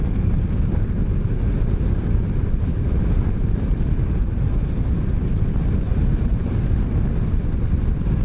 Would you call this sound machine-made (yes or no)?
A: no